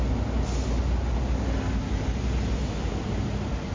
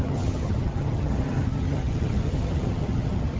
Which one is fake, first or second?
second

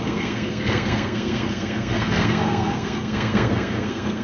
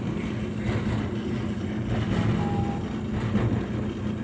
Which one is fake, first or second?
first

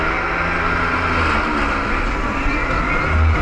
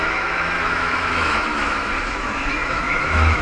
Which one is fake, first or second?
second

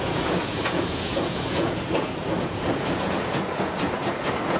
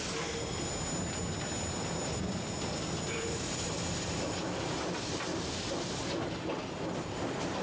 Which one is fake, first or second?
first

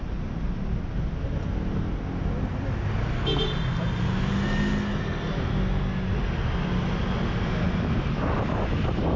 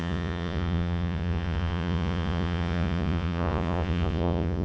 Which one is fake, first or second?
second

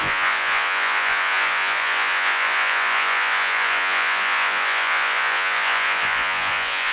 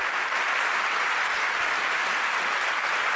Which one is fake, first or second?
first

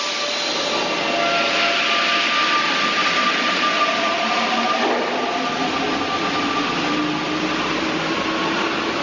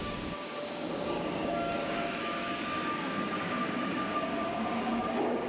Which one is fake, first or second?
second